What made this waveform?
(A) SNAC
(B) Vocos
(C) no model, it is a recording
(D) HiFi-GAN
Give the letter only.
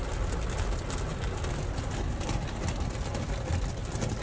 C